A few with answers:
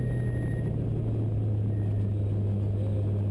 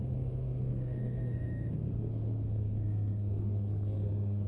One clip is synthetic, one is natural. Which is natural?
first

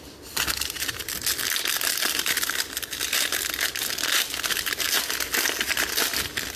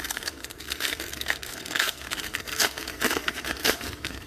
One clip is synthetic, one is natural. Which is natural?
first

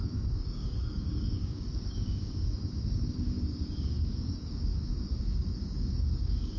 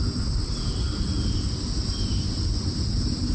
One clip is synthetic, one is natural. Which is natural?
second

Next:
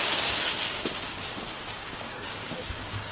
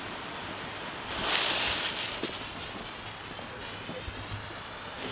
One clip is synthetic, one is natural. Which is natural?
second